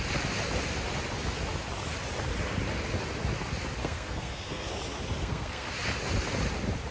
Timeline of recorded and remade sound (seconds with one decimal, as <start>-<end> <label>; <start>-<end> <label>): 0.0-3.8 recorded; 3.8-4.7 remade; 4.7-5.2 recorded; 5.2-5.7 remade; 5.7-6.9 recorded